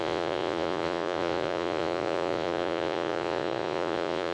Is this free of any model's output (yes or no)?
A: no